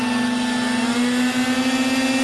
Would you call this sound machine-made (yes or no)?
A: no